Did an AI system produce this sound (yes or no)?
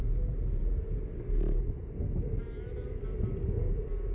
no